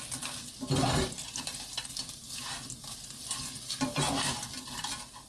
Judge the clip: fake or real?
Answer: real